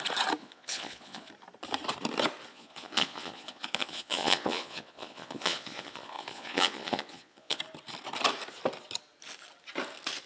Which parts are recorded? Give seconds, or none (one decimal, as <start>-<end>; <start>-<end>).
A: 0.0-0.4; 1.3-2.5; 7.6-10.3